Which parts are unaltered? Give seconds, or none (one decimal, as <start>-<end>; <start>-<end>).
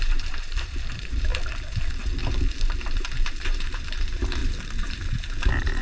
1.3-2.5